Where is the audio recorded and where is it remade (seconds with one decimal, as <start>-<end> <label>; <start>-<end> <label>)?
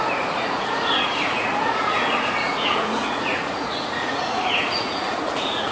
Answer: 0.0-5.7 remade